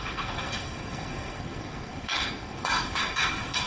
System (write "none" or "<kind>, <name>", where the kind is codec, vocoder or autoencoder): codec, SNAC